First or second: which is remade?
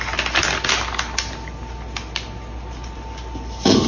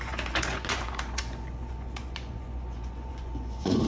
second